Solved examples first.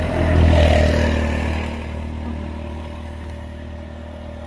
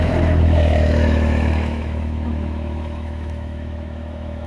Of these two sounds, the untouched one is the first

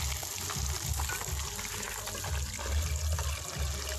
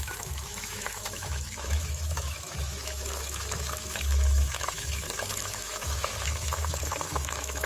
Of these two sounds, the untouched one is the first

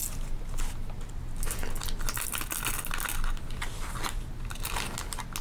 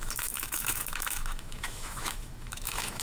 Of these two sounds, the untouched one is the first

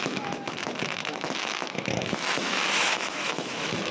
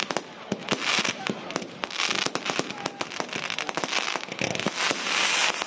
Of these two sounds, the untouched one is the second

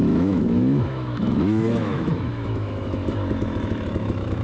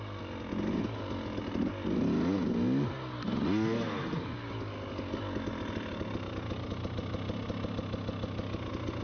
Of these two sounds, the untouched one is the second